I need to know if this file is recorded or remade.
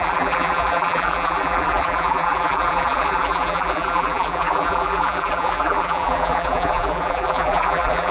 remade